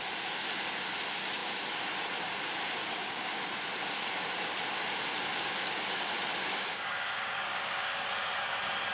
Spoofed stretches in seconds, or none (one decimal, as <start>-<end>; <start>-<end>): 2.8-3.4; 6.5-8.1

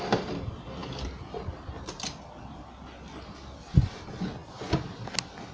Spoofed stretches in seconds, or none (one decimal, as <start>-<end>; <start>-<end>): none

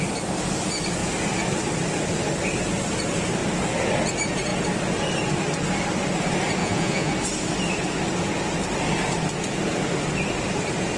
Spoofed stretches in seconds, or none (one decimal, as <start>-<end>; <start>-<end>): 6.6-7.1

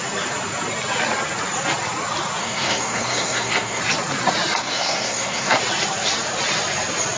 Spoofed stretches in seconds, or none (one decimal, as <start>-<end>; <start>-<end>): 2.4-3.8; 4.6-5.6

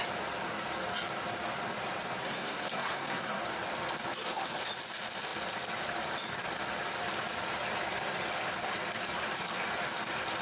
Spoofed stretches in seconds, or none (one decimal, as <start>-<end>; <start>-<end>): 2.2-3.4

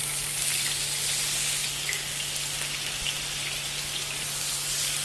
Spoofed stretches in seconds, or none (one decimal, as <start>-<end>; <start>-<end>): none